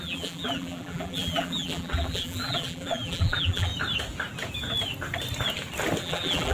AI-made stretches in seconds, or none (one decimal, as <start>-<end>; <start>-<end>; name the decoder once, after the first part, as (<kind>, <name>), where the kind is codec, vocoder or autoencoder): 0.0-3.7 (vocoder, BigVGAN v2); 6.0-6.5